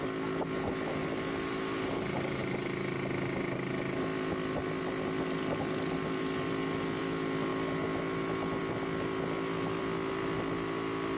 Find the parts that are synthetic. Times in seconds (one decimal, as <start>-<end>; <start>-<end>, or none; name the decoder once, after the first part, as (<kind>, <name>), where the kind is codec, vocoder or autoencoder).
none

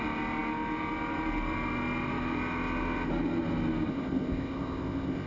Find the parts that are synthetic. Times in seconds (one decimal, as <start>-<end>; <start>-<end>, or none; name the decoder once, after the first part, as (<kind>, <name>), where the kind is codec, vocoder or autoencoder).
3.9-5.3 (codec, ZipCodec)

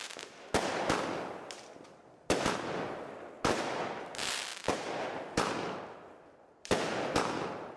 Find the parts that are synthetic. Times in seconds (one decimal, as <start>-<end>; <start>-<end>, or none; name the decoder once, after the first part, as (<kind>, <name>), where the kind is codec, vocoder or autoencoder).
none

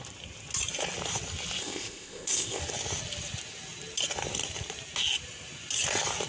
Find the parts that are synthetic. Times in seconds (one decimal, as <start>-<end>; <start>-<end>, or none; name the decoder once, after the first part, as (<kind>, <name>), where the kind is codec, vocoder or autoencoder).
1.6-2.6 (codec, ZipCodec)